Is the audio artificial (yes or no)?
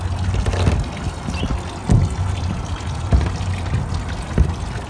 no